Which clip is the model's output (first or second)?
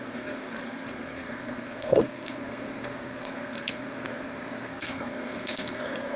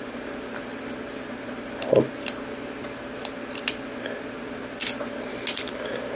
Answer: first